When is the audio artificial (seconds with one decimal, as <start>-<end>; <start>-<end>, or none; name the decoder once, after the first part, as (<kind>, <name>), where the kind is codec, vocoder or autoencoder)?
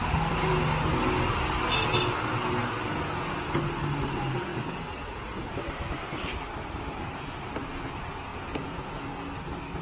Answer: 2.6-3.6 (vocoder, Vocos); 4.5-5.5; 8.3-9.0